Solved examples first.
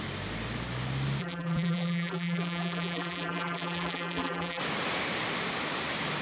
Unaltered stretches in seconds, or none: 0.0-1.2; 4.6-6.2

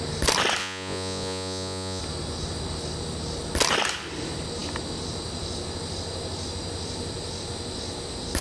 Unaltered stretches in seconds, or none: 0.0-0.6; 2.0-8.4

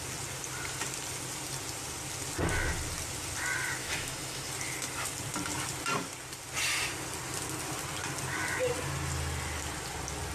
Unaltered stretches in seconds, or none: 0.0-3.8; 4.5-10.3

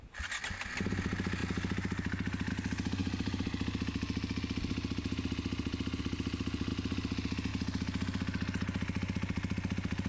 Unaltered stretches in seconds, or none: 0.0-1.4; 2.5-10.1

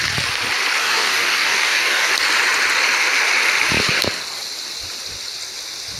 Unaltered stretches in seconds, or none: 0.0-0.8; 2.1-6.0